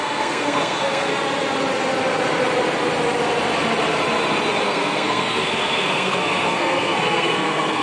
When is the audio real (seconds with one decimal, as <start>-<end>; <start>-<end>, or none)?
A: 1.1-4.6